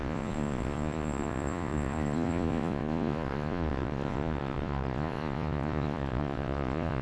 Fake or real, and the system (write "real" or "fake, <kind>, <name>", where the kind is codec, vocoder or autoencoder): fake, vocoder, Vocos